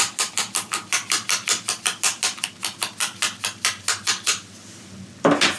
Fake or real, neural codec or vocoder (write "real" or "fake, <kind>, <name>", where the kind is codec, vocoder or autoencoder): real